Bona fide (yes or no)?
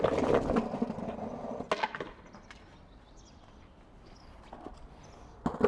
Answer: yes